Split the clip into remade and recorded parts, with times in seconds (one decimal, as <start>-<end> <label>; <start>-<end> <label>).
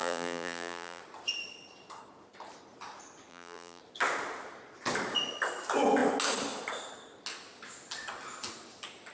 0.0-1.0 remade; 1.0-3.3 recorded; 3.3-3.8 remade; 3.8-9.1 recorded